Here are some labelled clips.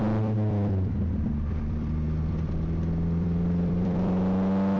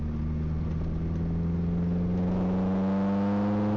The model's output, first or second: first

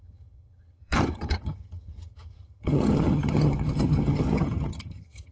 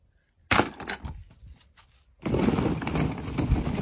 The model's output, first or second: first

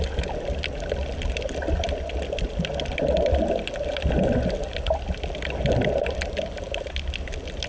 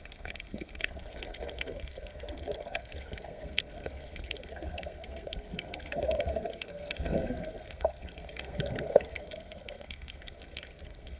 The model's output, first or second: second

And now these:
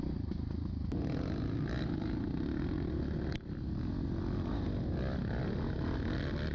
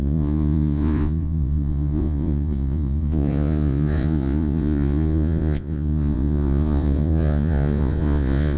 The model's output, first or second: second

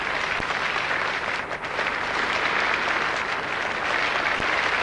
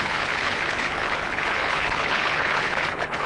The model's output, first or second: second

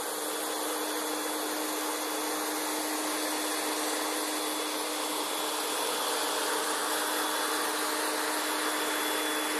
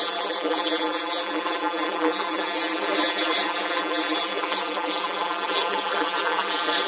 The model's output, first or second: second